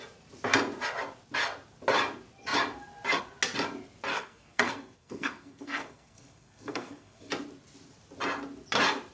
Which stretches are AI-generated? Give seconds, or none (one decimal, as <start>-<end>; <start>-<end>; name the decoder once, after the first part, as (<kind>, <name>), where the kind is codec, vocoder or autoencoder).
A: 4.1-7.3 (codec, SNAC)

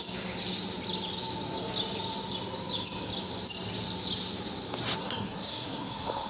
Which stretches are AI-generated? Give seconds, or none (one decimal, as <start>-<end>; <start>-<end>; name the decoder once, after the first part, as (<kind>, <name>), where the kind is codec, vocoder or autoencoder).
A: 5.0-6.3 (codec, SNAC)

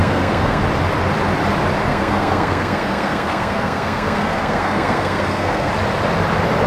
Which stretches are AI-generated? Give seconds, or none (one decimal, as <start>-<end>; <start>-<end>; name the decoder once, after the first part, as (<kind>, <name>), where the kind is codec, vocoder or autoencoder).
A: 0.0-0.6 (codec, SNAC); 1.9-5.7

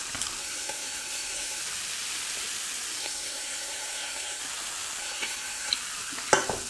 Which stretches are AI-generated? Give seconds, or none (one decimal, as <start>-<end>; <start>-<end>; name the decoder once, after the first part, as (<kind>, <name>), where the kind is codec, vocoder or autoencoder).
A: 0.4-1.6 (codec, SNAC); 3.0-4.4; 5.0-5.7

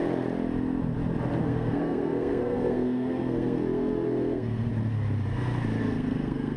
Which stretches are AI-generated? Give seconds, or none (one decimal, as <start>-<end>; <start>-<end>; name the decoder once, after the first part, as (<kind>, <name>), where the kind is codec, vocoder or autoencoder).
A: 1.4-4.7 (codec, SNAC); 5.8-6.6

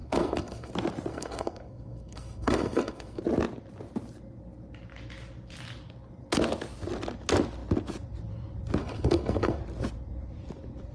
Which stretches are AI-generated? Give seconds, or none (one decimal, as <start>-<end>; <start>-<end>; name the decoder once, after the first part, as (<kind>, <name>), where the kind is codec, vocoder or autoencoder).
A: 0.0-0.7 (codec, SNAC); 1.1-3.2; 8.8-9.6

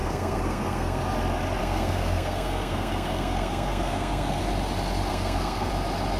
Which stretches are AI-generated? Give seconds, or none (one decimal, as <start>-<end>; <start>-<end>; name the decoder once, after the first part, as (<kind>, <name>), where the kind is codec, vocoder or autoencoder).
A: 0.0-1.0 (codec, SNAC); 1.6-4.4; 5.1-5.7